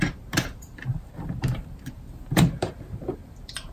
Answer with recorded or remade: remade